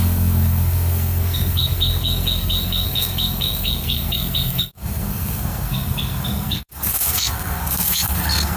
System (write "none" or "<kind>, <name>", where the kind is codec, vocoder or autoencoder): codec, SNAC